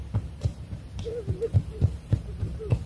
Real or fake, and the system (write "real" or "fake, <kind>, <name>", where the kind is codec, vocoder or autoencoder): fake, vocoder, BigVGAN v2